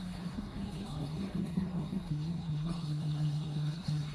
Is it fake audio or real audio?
fake